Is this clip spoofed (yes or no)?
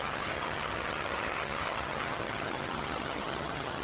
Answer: yes